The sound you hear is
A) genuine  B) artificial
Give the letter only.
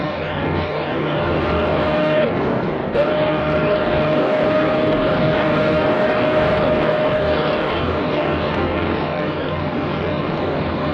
B